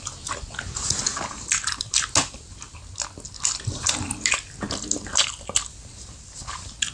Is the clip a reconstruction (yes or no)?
no